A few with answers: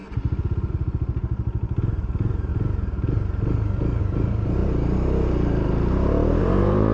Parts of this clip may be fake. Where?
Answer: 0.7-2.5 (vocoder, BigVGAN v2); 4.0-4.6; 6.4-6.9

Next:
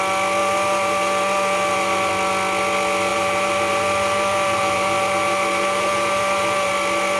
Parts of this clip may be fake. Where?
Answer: 0.4-2.1 (vocoder, BigVGAN v2); 3.1-6.7

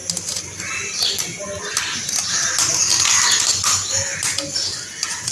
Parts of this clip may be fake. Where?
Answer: none

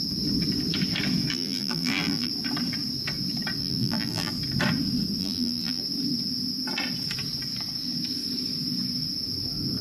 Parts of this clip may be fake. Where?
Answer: 1.3-2.3 (vocoder, BigVGAN v2); 3.6-4.3; 5.2-5.8